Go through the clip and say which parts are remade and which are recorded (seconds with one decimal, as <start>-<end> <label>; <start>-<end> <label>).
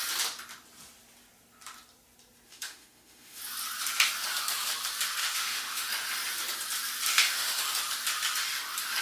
0.0-2.5 recorded; 2.5-3.4 remade; 3.4-5.2 recorded; 5.2-5.9 remade; 5.9-7.1 recorded; 7.1-7.6 remade; 7.6-9.0 recorded